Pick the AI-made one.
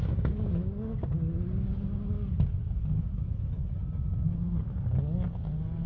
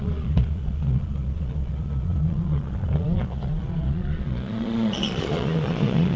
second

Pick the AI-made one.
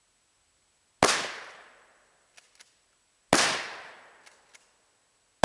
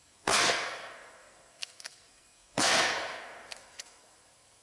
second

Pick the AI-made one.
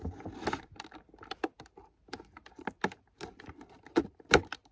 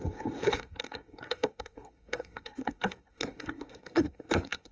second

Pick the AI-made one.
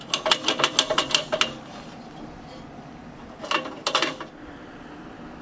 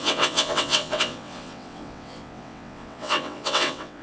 second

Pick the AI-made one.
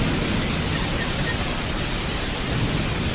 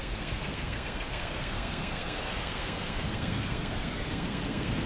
second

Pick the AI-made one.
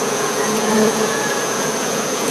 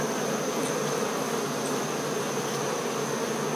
first